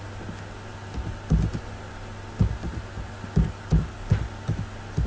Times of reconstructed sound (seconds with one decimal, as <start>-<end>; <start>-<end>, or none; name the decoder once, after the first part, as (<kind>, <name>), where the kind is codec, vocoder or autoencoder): none